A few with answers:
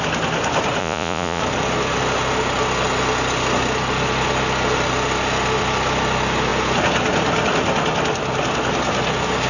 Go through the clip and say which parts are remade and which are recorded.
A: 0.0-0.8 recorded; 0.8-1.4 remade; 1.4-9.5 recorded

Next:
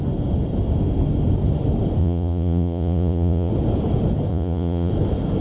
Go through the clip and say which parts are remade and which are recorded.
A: 0.0-2.0 recorded; 2.0-3.5 remade; 3.5-4.3 recorded; 4.3-4.9 remade; 4.9-5.4 recorded

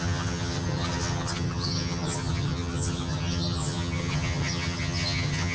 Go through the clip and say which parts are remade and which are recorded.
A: 0.0-5.5 remade

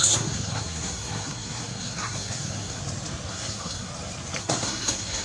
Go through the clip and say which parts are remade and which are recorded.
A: 0.0-2.8 remade; 2.8-3.3 recorded; 3.3-3.9 remade; 3.9-4.4 recorded; 4.4-5.2 remade

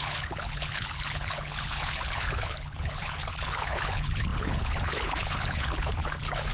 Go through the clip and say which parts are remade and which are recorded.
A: 0.0-6.5 remade

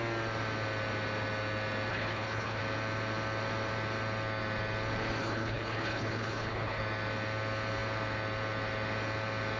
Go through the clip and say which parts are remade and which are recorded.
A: 0.0-1.9 recorded; 1.9-2.6 remade; 2.6-5.2 recorded; 5.2-6.8 remade; 6.8-9.6 recorded